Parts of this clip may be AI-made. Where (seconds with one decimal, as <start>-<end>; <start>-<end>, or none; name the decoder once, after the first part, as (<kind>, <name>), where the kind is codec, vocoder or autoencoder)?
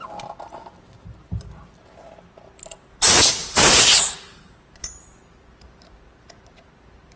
3.4-7.2 (vocoder, BigVGAN v2)